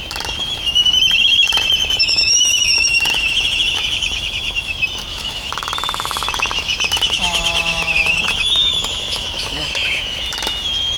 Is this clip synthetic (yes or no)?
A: yes